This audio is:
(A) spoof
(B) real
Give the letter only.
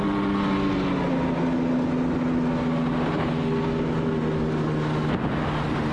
B